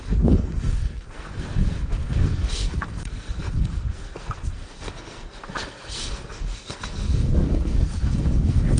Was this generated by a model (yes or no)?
yes